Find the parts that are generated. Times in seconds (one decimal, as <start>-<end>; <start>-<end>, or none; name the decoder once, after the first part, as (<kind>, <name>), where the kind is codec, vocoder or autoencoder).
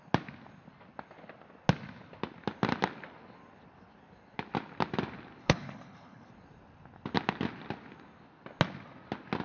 5.4-6.3 (codec, HILCodec)